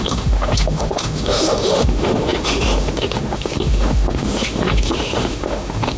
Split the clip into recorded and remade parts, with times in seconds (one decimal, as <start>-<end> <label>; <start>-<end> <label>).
0.0-6.0 remade